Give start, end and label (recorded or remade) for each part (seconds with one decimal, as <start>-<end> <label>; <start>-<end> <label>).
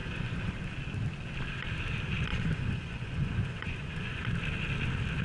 0.0-0.5 remade; 0.5-2.3 recorded; 2.3-4.2 remade; 4.2-5.2 recorded